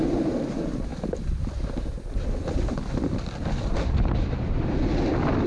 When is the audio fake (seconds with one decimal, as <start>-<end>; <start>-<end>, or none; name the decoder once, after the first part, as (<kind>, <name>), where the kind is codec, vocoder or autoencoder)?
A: none